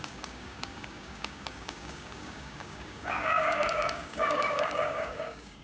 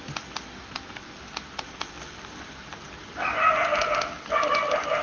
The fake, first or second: first